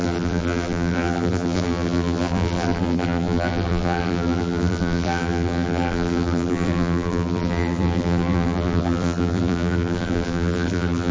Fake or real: fake